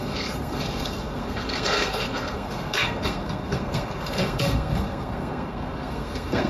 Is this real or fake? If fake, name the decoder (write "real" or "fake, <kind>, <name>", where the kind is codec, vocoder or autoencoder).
fake, codec, SNAC